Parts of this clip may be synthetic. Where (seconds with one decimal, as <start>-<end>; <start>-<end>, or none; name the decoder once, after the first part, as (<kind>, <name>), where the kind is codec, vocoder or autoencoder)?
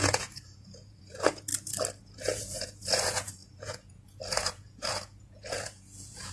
0.0-1.5 (vocoder, Vocos); 2.0-6.3